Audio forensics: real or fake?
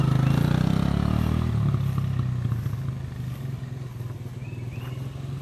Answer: real